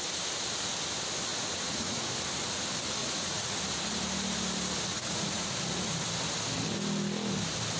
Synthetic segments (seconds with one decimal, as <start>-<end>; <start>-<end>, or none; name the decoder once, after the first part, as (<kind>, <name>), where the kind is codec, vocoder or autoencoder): 1.3-2.1 (vocoder, Vocos); 3.0-3.6; 4.9-5.5